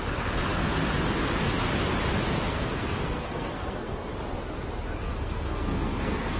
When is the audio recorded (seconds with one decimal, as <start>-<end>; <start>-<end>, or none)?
0.0-2.5; 4.1-5.0